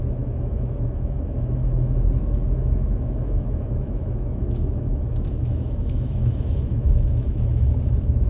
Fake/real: fake